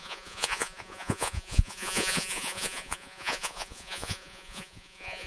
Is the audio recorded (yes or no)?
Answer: no